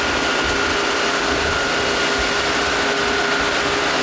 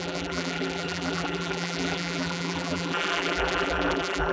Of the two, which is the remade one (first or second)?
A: second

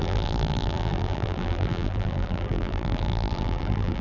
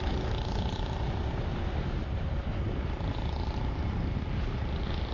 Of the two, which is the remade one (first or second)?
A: first